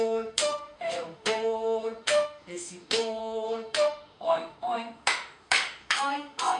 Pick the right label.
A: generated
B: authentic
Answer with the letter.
A